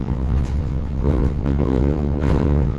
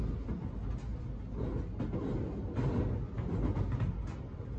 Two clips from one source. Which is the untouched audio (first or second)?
second